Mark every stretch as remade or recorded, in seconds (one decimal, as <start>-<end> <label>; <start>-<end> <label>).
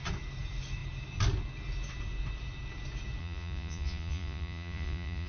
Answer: 0.0-3.2 recorded; 3.2-5.3 remade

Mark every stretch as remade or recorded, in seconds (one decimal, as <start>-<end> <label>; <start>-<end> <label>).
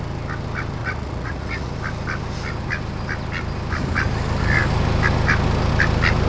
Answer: 0.0-0.8 recorded; 0.8-1.7 remade; 1.7-6.3 recorded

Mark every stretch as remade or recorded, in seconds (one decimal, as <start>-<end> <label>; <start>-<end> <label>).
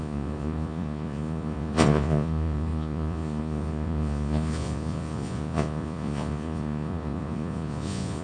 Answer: 0.0-8.2 remade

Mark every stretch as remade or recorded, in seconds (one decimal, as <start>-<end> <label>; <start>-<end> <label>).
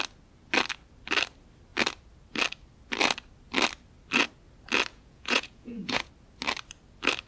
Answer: 0.0-4.9 recorded; 4.9-6.1 remade; 6.1-7.3 recorded